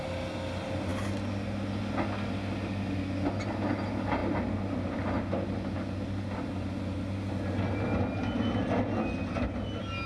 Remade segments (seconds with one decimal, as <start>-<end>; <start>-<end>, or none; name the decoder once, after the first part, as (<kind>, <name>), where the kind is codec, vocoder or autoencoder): none